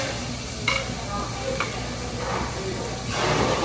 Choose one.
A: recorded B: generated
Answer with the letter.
A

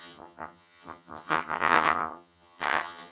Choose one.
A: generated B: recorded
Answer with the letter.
A